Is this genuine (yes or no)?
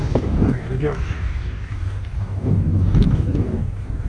no